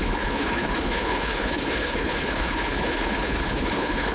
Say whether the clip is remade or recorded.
remade